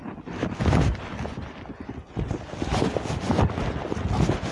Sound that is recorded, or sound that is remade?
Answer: recorded